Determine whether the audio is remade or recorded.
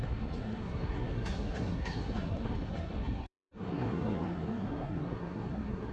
remade